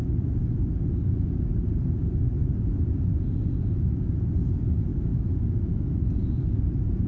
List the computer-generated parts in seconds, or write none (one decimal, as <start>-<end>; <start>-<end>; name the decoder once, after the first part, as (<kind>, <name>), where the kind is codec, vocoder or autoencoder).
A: none